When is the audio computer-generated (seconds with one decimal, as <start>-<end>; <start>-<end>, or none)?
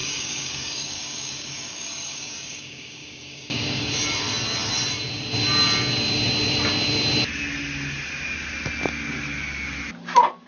0.0-3.9